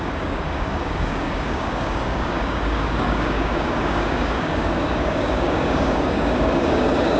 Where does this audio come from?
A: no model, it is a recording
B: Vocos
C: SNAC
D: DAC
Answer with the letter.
D